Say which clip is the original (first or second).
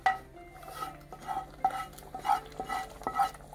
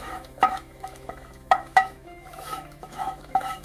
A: first